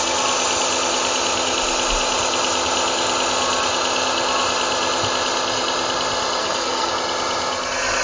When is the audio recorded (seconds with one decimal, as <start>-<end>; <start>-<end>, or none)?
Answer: 0.0-6.4; 6.9-8.0